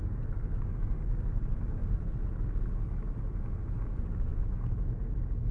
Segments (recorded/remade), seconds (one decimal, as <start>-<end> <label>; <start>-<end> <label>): 0.0-4.3 recorded; 4.3-5.5 remade